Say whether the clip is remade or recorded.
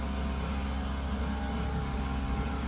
recorded